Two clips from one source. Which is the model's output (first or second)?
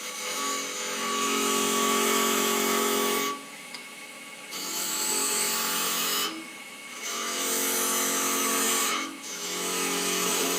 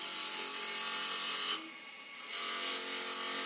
first